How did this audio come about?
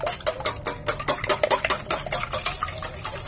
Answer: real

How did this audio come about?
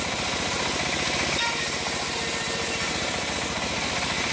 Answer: real